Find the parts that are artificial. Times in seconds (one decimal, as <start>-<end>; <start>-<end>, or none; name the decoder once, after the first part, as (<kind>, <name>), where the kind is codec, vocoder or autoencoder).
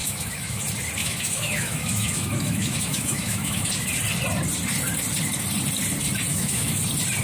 0.0-0.6 (autoencoder, DAC-VAE); 1.0-3.7; 6.3-6.8